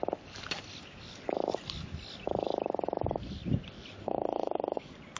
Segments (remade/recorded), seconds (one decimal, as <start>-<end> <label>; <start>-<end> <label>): 0.0-4.0 recorded; 4.0-4.8 remade; 4.8-5.2 recorded